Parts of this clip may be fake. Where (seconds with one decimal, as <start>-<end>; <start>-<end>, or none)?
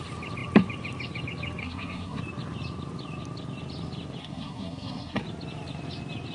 1.6-2.2; 4.2-5.2